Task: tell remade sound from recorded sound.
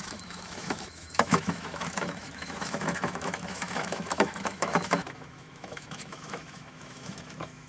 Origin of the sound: remade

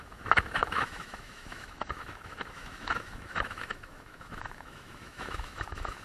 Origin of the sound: remade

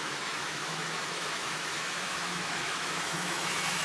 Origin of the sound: remade